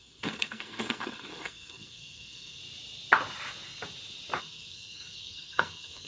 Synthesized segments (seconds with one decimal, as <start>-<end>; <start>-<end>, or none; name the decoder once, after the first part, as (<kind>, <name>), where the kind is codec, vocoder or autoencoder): 0.0-2.6 (codec, SNAC); 4.4-6.1